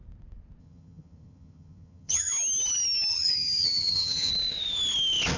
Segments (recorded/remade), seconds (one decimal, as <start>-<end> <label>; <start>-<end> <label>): 0.0-0.6 recorded; 0.6-2.3 remade; 2.3-3.1 recorded; 3.1-4.3 remade; 4.3-5.4 recorded